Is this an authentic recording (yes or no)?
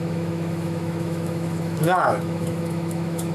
no